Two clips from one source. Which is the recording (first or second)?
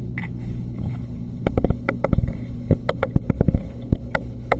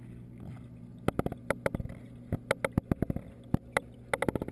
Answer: second